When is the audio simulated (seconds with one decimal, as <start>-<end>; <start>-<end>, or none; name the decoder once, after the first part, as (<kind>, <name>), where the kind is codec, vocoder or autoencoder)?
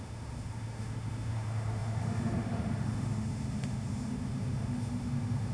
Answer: 0.0-5.5 (autoencoder, DAC-VAE)